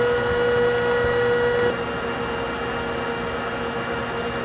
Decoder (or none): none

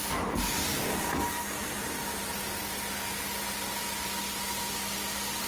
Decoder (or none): none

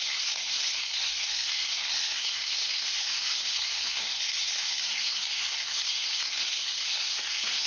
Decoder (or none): codec, SNAC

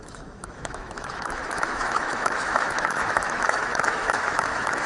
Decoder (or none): autoencoder, DAC-VAE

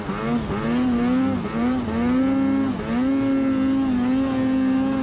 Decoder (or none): none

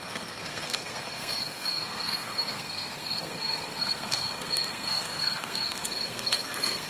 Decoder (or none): codec, SNAC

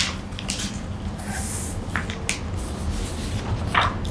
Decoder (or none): none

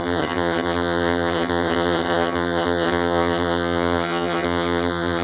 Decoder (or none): vocoder, HiFi-GAN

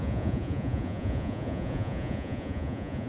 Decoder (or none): vocoder, Vocos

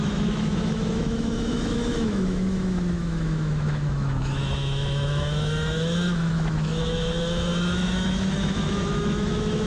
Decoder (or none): autoencoder, DAC-VAE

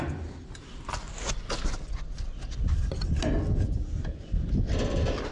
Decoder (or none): none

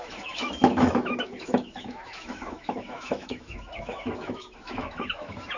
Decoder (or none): autoencoder, DAC-VAE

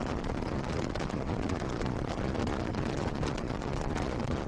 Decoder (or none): vocoder, Vocos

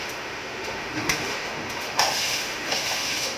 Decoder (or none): autoencoder, DAC-VAE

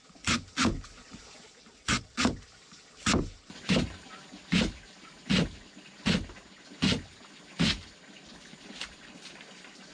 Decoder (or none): none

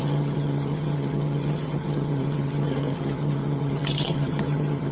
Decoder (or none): vocoder, HiFi-GAN